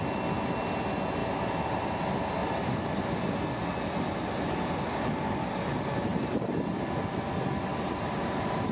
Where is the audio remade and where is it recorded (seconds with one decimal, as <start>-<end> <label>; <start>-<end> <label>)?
0.0-1.2 recorded; 1.2-2.0 remade; 2.0-2.4 recorded; 2.4-3.0 remade; 3.0-7.7 recorded; 7.7-8.7 remade

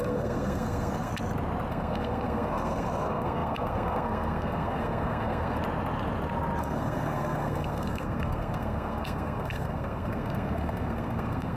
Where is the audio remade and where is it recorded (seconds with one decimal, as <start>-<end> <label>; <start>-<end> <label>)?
0.0-1.1 remade; 1.1-1.7 recorded; 1.7-5.6 remade; 5.6-6.6 recorded; 6.6-11.6 remade

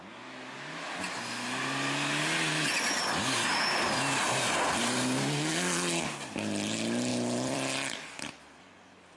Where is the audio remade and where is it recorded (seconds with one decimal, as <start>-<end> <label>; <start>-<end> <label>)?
0.0-7.1 recorded; 7.1-8.3 remade; 8.3-9.2 recorded

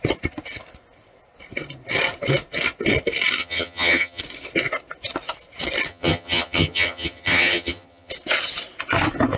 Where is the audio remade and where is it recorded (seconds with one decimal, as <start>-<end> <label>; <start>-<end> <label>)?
0.0-3.4 recorded; 3.4-4.2 remade; 4.2-5.9 recorded; 5.9-8.1 remade; 8.1-9.4 recorded

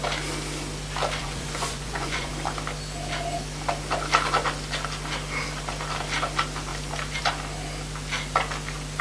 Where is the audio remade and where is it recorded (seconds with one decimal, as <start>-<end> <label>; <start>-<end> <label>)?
0.0-1.2 recorded; 1.2-2.3 remade; 2.3-9.0 recorded

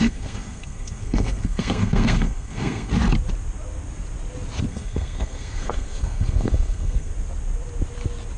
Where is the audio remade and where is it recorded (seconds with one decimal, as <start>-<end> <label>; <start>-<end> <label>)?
0.0-2.9 remade; 2.9-4.7 recorded; 4.7-7.1 remade; 7.1-8.4 recorded